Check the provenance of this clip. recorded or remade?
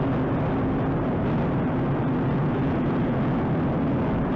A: recorded